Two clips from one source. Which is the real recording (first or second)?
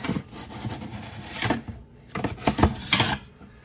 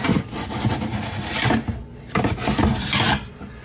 second